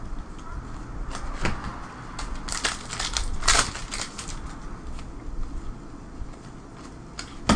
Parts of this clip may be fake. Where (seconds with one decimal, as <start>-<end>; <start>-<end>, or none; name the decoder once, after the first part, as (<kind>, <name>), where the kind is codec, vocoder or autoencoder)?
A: none